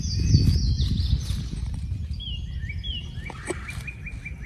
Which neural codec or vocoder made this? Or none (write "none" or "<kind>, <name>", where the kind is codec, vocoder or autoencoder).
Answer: none